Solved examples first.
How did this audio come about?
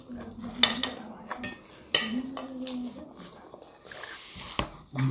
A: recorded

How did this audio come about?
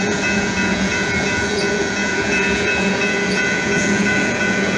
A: remade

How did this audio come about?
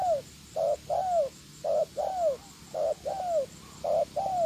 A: recorded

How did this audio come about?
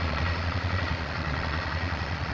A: remade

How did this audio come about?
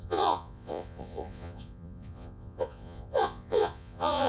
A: remade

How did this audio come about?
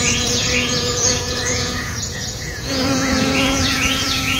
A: remade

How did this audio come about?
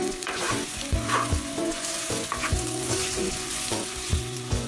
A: remade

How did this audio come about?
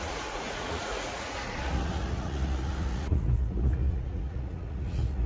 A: remade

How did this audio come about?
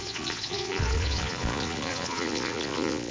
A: remade